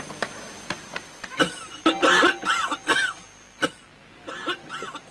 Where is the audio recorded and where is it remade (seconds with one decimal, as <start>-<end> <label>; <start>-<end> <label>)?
0.0-5.1 recorded